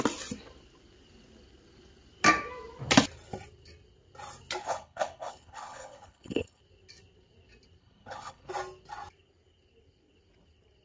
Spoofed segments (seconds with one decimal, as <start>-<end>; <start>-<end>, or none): 4.6-6.6; 7.8-8.5

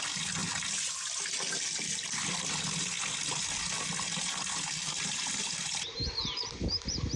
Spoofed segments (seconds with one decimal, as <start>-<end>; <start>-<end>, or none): none

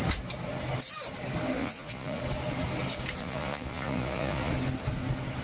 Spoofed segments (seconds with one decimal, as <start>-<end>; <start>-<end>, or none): 1.6-2.2; 3.2-4.5

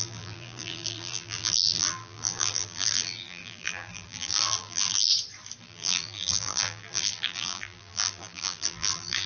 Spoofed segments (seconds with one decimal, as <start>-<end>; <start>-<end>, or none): 0.0-5.1; 5.6-9.3